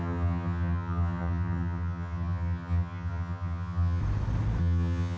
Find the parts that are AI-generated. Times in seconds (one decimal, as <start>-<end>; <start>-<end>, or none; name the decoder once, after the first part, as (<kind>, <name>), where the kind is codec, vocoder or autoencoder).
0.0-4.0 (vocoder, HiFi-GAN); 4.6-5.2